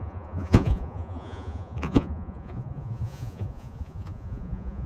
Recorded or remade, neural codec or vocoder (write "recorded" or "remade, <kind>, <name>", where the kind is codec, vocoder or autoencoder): remade, vocoder, Vocos